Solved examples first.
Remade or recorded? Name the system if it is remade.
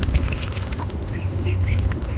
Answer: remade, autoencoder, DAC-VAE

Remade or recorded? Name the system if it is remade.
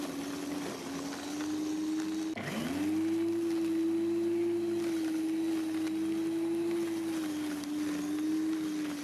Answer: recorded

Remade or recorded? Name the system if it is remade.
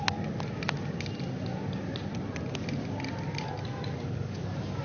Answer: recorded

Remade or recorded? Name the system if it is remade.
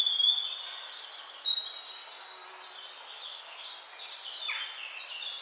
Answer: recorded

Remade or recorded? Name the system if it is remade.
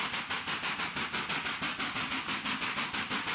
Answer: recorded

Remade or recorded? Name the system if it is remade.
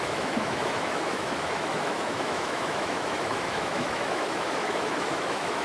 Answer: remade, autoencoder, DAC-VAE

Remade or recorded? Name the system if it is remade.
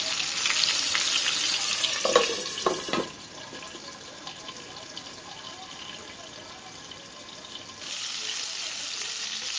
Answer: recorded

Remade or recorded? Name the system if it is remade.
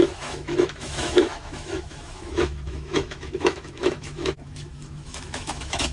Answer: remade, autoencoder, DAC-VAE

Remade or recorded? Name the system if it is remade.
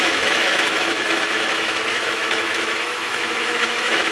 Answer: remade, autoencoder, DAC-VAE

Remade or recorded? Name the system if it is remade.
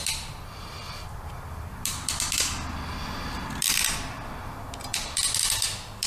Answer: recorded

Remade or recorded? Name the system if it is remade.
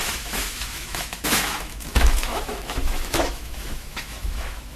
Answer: remade, autoencoder, DAC-VAE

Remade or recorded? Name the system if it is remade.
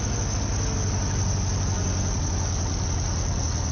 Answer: recorded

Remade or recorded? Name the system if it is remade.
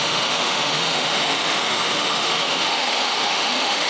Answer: remade, autoencoder, DAC-VAE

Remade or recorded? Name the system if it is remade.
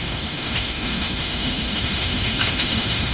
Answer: remade, autoencoder, DAC-VAE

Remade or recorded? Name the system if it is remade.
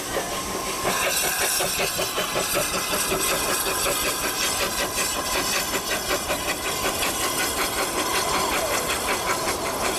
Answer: recorded